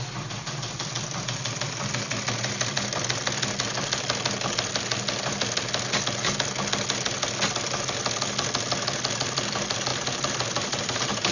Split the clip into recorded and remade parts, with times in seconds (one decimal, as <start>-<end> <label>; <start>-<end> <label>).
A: 0.0-9.9 recorded; 9.9-11.3 remade